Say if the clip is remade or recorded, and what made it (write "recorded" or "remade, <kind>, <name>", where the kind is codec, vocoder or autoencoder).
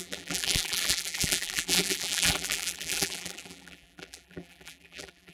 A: remade, vocoder, BigVGAN v2